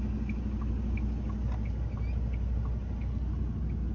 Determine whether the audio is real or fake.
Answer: real